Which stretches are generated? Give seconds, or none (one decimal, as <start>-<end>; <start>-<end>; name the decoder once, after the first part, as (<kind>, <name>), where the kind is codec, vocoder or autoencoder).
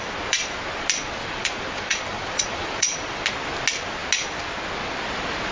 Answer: 1.2-3.2 (vocoder, Vocos)